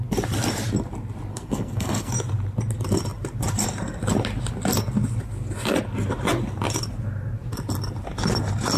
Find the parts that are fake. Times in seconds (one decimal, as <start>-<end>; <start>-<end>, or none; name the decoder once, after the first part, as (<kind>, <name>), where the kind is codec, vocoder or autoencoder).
1.3-2.1 (codec, SNAC)